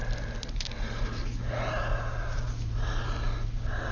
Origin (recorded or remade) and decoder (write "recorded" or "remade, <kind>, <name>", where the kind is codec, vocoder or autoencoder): recorded